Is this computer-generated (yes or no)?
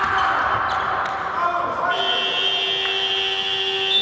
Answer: no